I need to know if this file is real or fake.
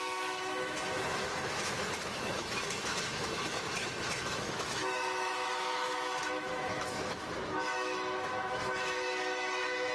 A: fake